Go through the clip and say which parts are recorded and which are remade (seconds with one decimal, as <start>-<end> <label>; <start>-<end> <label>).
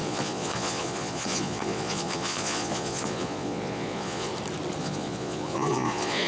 0.0-4.3 remade; 4.3-4.8 recorded; 4.8-6.3 remade